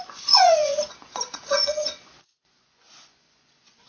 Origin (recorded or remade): remade